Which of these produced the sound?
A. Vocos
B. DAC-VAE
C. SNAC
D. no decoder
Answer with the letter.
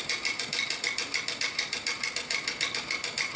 D